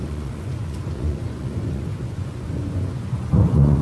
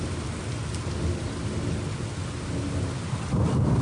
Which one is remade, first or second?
first